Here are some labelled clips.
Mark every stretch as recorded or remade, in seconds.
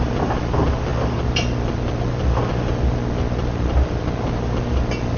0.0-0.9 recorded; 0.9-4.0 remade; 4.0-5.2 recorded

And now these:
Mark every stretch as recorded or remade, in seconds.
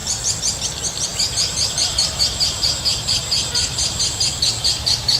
0.0-1.1 recorded; 1.1-4.2 remade; 4.2-5.2 recorded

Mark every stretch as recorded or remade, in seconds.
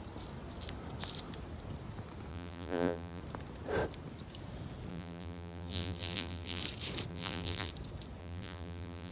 0.0-2.3 recorded; 2.3-3.2 remade; 3.2-4.9 recorded; 4.9-6.6 remade; 6.6-7.1 recorded; 7.1-7.7 remade; 7.7-8.2 recorded; 8.2-9.1 remade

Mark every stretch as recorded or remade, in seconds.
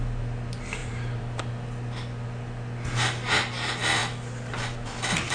0.0-0.8 recorded; 0.8-1.4 remade; 1.4-5.3 recorded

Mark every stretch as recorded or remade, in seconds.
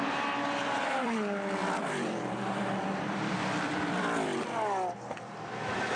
0.0-6.0 remade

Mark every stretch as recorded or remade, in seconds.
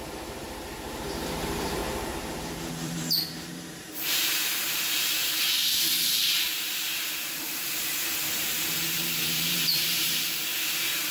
0.0-1.8 remade; 1.8-2.4 recorded; 2.4-11.1 remade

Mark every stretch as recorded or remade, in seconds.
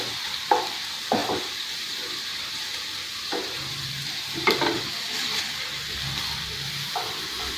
0.0-1.2 recorded; 1.2-5.4 remade; 5.4-7.6 recorded